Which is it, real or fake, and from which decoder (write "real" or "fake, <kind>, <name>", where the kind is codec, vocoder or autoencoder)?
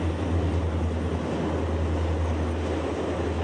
real